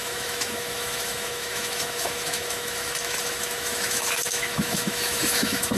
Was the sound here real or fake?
fake